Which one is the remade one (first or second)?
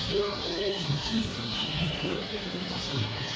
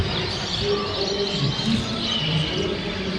first